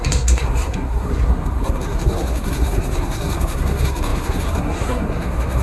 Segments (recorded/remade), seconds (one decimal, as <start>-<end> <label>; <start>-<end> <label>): 0.0-5.6 remade